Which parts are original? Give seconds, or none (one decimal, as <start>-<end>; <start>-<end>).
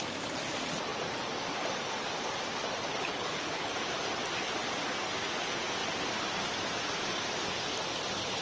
0.0-2.9; 3.7-8.4